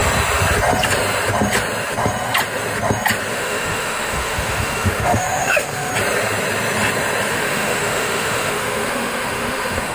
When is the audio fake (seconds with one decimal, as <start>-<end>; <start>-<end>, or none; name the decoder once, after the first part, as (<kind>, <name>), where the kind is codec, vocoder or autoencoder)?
3.3-5.9 (autoencoder, DAC-VAE); 7.3-9.9